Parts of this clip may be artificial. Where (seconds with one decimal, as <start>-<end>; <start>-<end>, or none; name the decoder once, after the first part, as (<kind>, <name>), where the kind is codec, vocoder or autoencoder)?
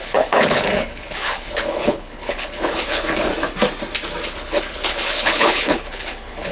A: 0.0-3.3 (codec, HILCodec); 4.3-6.5